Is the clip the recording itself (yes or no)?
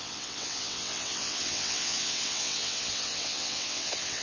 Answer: no